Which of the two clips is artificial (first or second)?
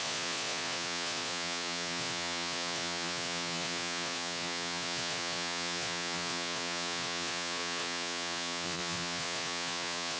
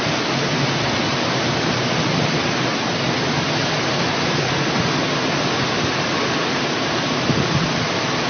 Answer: first